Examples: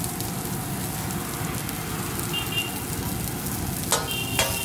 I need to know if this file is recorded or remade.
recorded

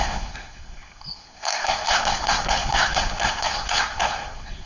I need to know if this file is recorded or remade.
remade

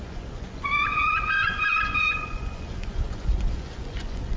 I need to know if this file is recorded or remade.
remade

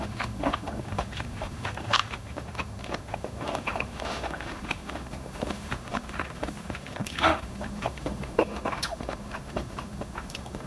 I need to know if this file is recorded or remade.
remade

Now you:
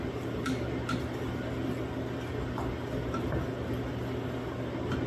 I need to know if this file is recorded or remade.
recorded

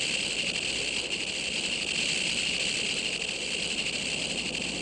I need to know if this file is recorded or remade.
remade